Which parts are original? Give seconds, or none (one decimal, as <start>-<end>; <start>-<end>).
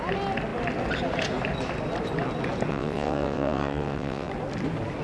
0.0-2.7; 4.3-5.0